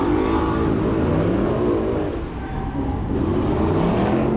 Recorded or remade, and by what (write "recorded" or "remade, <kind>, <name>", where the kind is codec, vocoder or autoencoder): recorded